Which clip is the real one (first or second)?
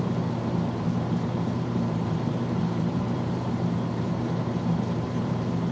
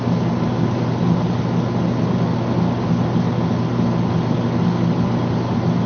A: second